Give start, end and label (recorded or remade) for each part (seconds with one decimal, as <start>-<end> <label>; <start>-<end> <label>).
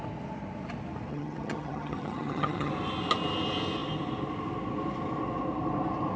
0.0-1.1 recorded; 1.1-2.7 remade; 2.7-6.2 recorded